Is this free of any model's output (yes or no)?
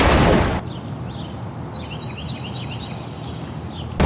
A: yes